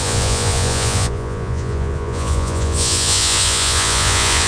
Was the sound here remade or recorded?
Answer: remade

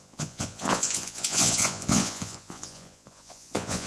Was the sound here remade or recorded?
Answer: remade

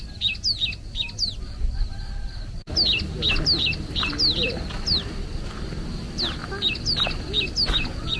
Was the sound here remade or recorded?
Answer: recorded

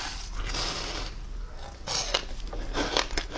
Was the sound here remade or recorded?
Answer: recorded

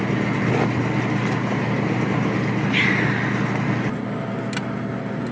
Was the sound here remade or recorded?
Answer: recorded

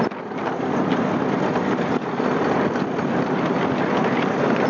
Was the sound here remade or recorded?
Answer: recorded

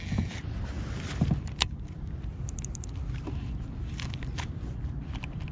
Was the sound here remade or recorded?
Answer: recorded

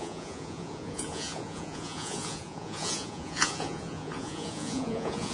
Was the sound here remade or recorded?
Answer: remade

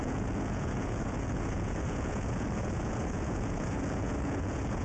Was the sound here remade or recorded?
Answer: remade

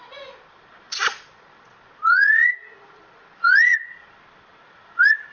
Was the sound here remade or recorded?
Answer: remade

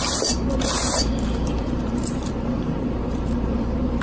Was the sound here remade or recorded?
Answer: remade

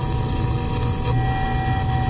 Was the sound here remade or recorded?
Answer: recorded